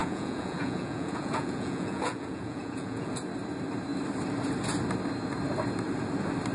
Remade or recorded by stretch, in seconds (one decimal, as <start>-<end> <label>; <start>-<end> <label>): 0.0-3.2 remade; 3.2-6.5 recorded